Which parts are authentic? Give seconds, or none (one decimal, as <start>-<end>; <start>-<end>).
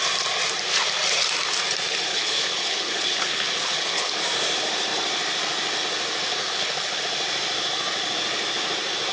0.0-2.1; 4.2-6.3; 7.0-9.1